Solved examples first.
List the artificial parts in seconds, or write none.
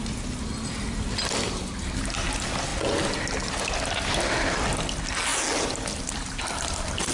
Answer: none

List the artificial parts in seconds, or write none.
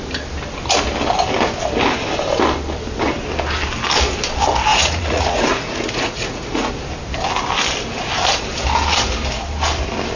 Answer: 4.7-6.7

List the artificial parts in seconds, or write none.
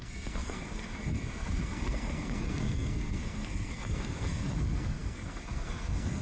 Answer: 0.0-6.2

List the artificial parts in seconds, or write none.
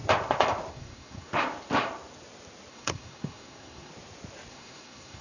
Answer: 0.7-1.3; 2.7-3.9; 4.5-5.2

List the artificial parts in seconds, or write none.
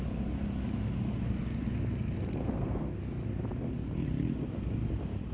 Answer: 2.4-3.0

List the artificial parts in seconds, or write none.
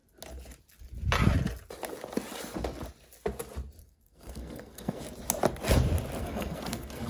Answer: 3.8-5.0; 6.2-7.1